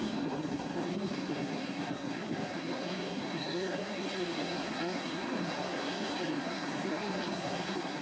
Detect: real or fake fake